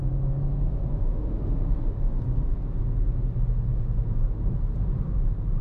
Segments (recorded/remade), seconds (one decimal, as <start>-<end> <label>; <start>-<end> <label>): 0.0-0.7 recorded; 0.7-2.2 remade; 2.2-5.6 recorded